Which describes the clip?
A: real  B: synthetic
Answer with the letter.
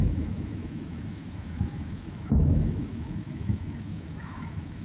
B